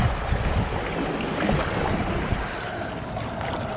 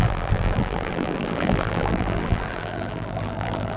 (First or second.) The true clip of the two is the first